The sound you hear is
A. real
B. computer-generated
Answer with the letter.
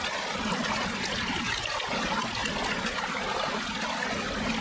A